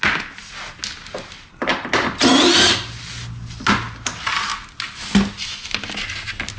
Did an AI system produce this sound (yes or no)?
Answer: no